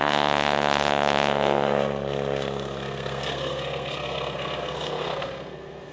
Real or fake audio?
fake